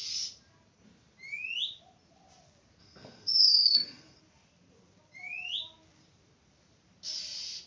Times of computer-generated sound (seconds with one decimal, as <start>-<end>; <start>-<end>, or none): 2.8-4.2